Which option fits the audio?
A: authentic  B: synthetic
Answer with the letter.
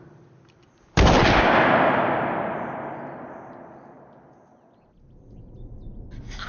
A